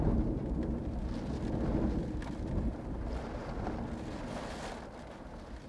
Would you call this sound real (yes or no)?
yes